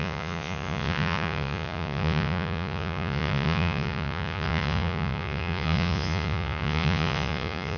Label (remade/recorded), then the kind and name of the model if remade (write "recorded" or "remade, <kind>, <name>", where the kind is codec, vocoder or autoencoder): remade, vocoder, Vocos